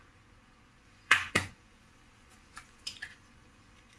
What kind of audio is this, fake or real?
fake